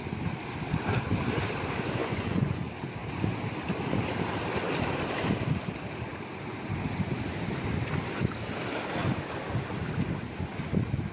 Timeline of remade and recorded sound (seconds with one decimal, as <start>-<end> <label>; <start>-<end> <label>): 0.0-2.0 recorded; 2.0-2.6 remade; 2.6-11.1 recorded